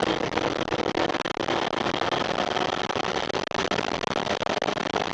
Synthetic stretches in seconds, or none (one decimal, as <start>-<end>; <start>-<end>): none